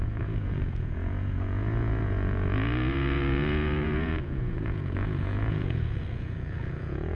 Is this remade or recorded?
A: remade